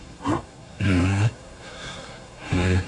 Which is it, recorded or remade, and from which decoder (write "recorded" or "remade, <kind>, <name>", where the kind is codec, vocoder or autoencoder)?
remade, codec, SNAC